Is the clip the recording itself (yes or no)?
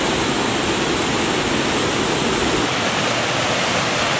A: yes